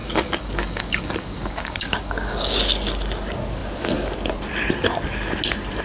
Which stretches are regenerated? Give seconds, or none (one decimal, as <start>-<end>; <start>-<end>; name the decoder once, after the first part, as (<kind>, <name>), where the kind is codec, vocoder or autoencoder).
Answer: 0.0-2.6 (codec, DAC)